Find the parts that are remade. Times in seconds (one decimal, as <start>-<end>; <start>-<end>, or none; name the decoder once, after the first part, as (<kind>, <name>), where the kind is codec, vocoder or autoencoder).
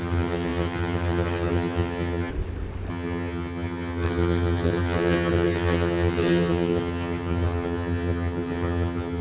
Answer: 0.0-2.3 (vocoder, HiFi-GAN); 2.9-9.2